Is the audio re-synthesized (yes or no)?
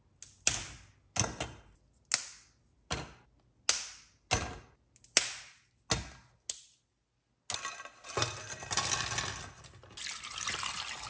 no